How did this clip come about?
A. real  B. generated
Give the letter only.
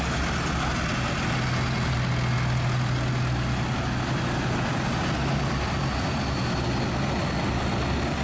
A